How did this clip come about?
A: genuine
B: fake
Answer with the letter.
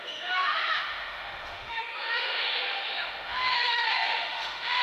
B